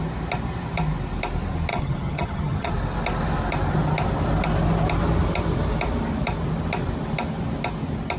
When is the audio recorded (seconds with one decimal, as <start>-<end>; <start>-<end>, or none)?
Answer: 0.0-1.7; 2.7-8.2